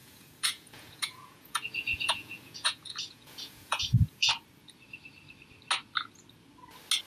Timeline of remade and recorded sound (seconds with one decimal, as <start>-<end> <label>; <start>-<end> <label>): 0.0-4.3 remade; 4.3-7.1 recorded